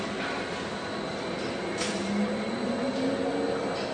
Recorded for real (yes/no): yes